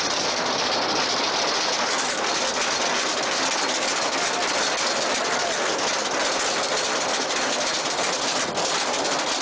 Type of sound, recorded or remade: recorded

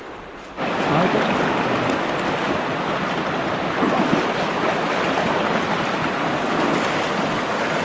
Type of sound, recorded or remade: recorded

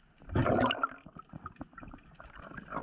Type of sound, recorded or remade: recorded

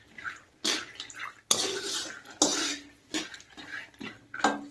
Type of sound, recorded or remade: recorded